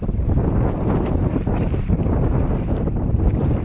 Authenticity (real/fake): fake